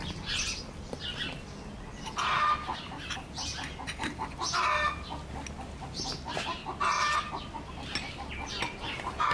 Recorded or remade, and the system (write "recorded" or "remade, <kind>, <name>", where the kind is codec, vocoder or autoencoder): recorded